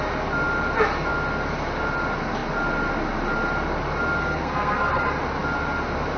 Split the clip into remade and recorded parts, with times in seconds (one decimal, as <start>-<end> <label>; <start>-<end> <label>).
0.0-4.2 recorded; 4.2-5.0 remade; 5.0-6.2 recorded

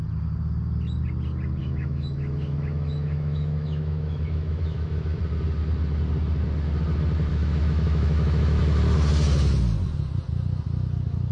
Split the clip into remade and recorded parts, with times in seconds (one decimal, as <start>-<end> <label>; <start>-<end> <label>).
0.0-1.6 recorded; 1.6-5.2 remade; 5.2-7.3 recorded; 7.3-8.6 remade; 8.6-11.3 recorded

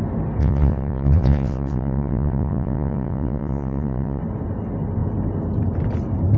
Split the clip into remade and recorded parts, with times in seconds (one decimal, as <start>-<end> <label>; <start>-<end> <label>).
0.0-0.4 recorded; 0.4-4.2 remade; 4.2-6.4 recorded

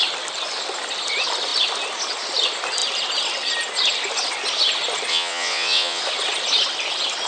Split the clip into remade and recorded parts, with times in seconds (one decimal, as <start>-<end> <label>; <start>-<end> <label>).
0.0-5.1 recorded; 5.1-6.0 remade; 6.0-7.3 recorded

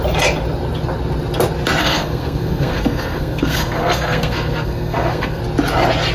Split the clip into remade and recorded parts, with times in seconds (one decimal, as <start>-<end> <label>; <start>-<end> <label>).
0.0-1.8 recorded; 1.8-5.4 remade; 5.4-6.1 recorded